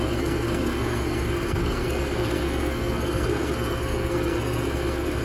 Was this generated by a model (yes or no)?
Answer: yes